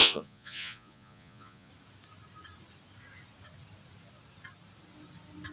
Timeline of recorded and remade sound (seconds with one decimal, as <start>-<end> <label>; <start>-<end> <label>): 0.0-1.7 remade; 1.7-5.5 recorded